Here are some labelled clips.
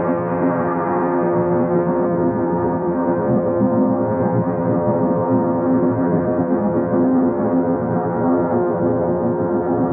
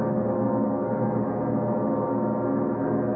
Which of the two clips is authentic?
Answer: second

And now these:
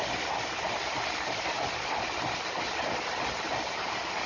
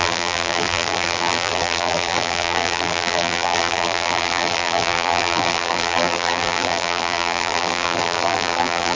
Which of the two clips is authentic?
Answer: first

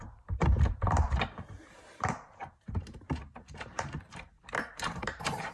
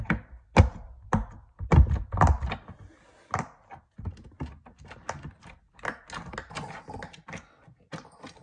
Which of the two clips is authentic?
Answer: second